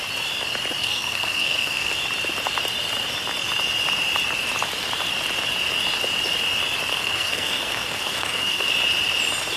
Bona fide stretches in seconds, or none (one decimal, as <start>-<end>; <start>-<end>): 0.0-0.8; 2.0-6.9; 8.7-9.6